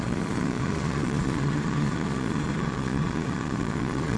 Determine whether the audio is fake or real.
fake